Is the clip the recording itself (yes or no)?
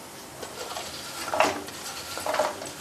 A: yes